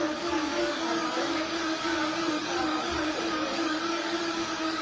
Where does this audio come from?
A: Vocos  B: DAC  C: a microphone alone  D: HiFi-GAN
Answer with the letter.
B